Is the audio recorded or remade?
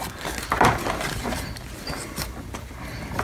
recorded